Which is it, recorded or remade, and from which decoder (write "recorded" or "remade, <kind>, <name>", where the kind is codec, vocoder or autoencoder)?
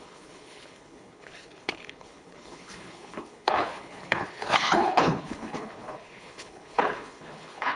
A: remade, codec, HILCodec